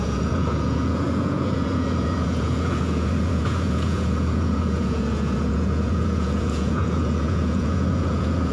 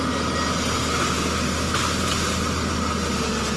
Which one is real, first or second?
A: second